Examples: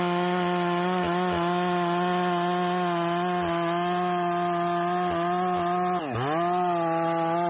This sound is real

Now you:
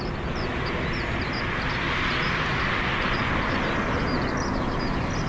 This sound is real